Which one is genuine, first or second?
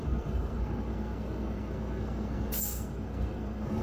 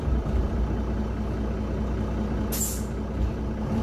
second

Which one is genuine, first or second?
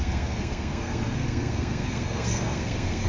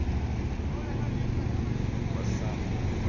second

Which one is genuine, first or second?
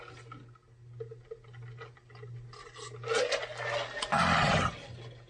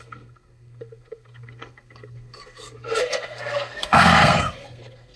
first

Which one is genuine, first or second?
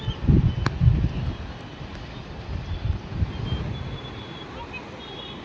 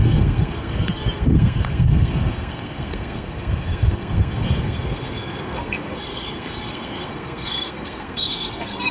first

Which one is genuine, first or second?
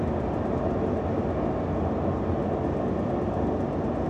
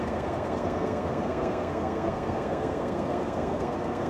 first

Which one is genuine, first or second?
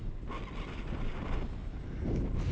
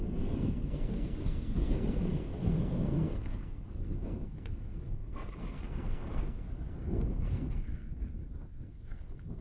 first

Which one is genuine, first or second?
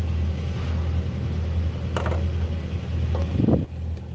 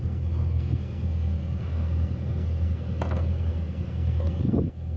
first